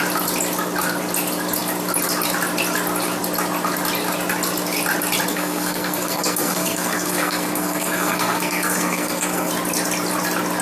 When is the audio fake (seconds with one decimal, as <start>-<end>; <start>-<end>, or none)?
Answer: 5.3-9.5